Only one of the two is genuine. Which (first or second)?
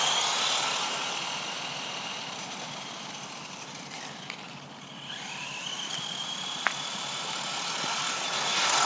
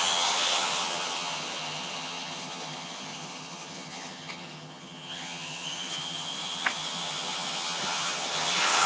first